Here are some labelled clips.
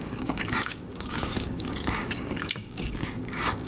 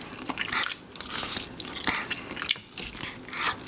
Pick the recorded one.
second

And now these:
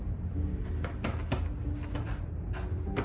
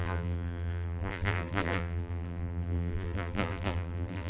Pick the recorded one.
first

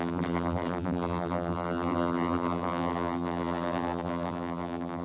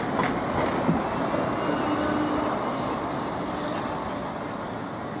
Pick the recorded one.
second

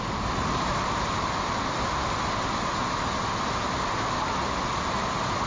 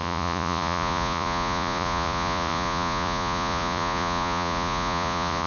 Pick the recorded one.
first